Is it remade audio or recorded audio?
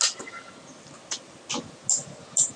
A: recorded